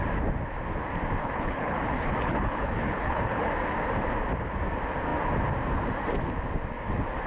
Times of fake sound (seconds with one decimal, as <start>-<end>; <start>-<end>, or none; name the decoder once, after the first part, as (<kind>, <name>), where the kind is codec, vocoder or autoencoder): 1.2-3.5 (codec, HILCodec)